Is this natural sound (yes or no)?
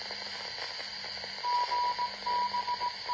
yes